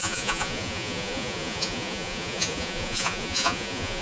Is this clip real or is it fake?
fake